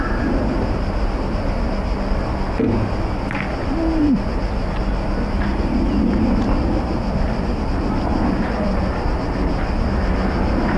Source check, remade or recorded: recorded